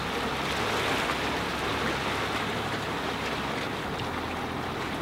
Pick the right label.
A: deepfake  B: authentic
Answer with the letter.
B